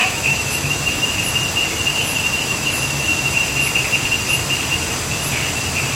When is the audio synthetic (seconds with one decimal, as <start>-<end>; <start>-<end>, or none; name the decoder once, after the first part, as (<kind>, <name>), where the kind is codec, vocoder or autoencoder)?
0.0-1.2 (autoencoder, DAC-VAE); 1.9-3.4